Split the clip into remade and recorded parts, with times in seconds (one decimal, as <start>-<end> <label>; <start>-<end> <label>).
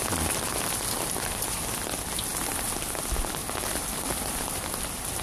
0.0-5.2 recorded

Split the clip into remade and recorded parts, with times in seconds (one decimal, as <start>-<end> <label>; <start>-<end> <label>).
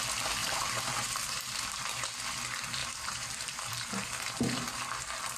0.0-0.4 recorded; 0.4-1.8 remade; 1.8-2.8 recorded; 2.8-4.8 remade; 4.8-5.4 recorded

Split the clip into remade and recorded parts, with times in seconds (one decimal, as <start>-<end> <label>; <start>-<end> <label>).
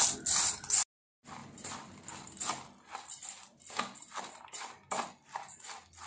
0.0-6.1 recorded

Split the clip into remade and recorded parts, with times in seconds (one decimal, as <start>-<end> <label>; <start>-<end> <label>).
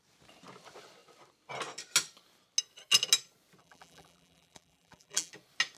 0.0-3.6 recorded; 3.6-5.3 remade; 5.3-5.8 recorded